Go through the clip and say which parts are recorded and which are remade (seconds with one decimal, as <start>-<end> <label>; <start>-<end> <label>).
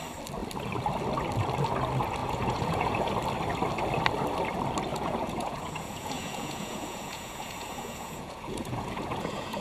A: 0.0-2.2 recorded; 2.2-3.1 remade; 3.1-4.9 recorded; 4.9-9.6 remade